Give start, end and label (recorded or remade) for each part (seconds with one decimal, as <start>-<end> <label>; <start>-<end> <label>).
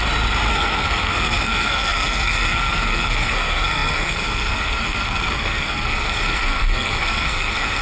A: 0.0-0.5 recorded; 0.5-7.8 remade